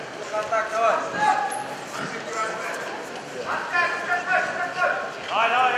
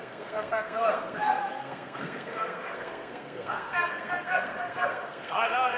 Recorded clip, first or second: first